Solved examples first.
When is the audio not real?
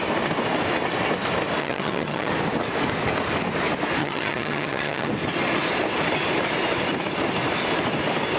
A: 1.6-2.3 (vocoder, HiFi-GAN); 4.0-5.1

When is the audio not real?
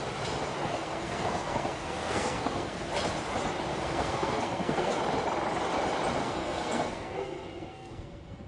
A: 0.6-2.9 (codec, SNAC); 3.7-5.0; 6.2-8.5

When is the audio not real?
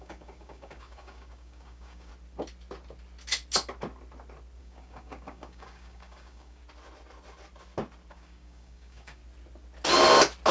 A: 0.0-2.1 (codec, DAC); 4.6-6.6; 8.1-9.2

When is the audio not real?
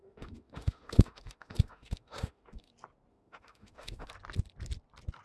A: 0.0-2.7 (autoencoder, DAC-VAE); 3.1-4.1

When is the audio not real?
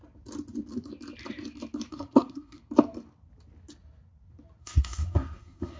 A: 1.9-2.6 (codec, SNAC); 4.6-5.8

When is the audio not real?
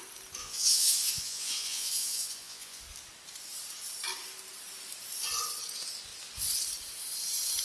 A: 0.4-2.8 (vocoder, Vocos)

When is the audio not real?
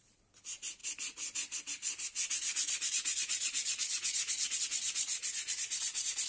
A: none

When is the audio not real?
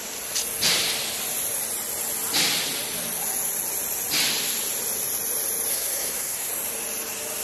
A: 5.7-6.5 (codec, SNAC)